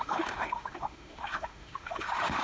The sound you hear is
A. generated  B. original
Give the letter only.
A